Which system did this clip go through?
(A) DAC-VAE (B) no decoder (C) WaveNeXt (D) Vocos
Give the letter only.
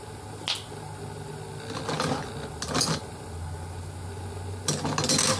B